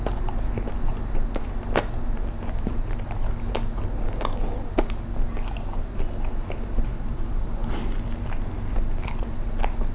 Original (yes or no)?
yes